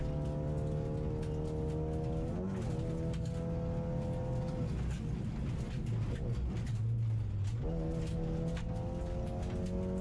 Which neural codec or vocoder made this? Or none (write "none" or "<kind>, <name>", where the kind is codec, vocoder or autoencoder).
none